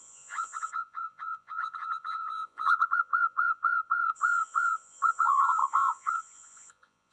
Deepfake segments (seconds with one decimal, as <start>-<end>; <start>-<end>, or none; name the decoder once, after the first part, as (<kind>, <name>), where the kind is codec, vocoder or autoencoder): 0.0-7.1 (vocoder, Vocos)